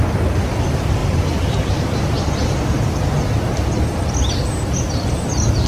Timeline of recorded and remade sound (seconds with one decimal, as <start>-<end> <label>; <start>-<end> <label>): 0.0-1.0 recorded; 1.0-2.3 remade; 2.3-5.7 recorded